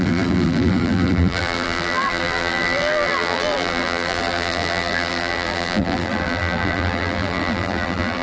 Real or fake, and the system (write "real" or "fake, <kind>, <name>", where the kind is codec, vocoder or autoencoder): fake, vocoder, BigVGAN v2